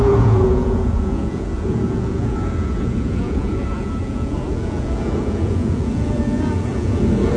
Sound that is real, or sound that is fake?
fake